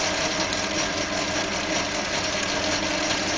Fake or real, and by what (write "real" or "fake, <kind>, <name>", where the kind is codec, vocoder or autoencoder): real